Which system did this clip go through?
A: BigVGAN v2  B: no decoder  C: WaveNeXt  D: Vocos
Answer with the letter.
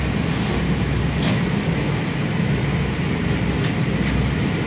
B